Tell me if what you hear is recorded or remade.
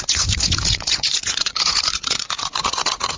remade